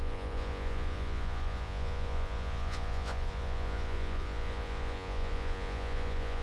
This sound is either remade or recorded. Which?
remade